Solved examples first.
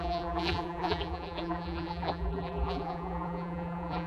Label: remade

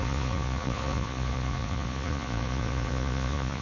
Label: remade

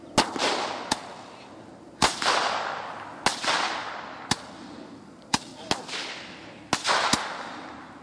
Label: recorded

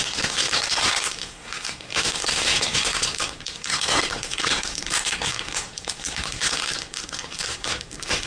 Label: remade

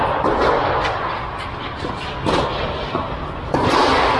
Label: recorded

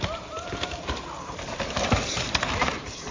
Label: remade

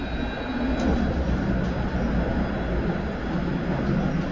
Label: recorded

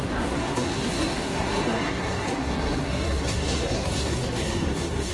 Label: remade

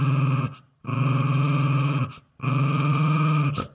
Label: remade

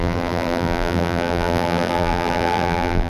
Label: remade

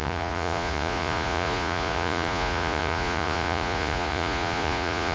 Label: remade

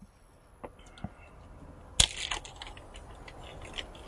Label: recorded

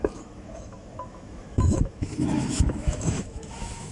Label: remade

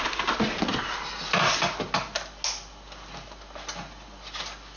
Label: recorded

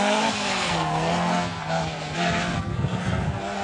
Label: remade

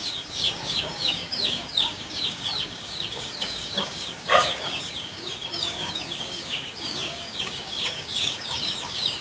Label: remade